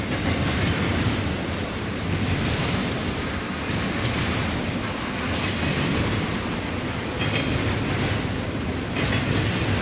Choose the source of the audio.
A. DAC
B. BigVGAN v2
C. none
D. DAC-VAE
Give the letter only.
C